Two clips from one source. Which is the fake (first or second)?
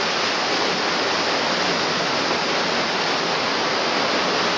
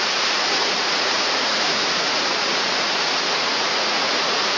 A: second